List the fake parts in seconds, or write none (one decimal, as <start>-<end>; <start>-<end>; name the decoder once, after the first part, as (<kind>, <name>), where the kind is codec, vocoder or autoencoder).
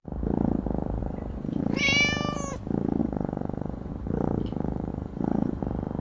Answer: 1.0-1.6 (vocoder, Vocos); 3.0-3.9; 4.9-5.6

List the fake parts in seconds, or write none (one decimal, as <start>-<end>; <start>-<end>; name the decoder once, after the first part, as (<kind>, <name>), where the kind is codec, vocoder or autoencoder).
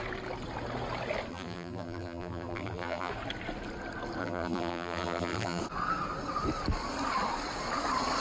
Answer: 1.3-3.1 (vocoder, BigVGAN v2); 4.2-5.6